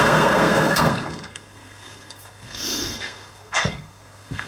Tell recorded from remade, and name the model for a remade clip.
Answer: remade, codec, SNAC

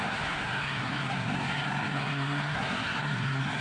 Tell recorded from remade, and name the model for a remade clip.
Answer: remade, codec, SNAC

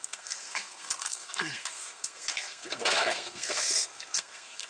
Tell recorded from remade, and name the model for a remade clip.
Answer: remade, codec, SNAC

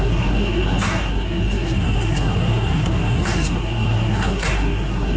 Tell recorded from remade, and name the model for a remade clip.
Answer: remade, codec, SNAC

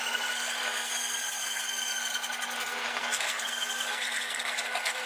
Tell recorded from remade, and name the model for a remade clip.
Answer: remade, codec, SNAC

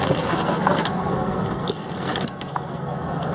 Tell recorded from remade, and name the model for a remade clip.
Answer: remade, codec, SNAC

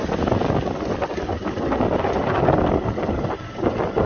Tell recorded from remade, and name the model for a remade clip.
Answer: recorded